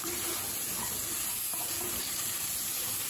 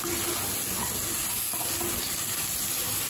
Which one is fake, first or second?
first